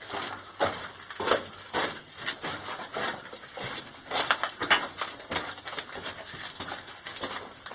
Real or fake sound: real